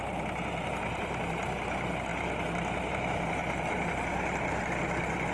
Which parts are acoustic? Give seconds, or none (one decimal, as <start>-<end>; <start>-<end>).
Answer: 0.0-5.3